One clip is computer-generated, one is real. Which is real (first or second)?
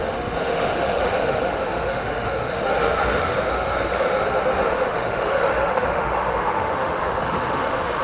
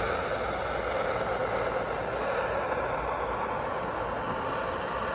second